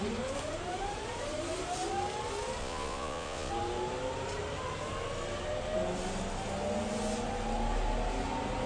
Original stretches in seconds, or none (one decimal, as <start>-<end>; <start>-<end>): 0.0-2.6; 3.5-8.7